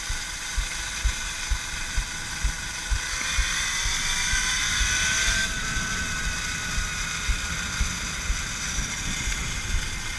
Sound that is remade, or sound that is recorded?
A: recorded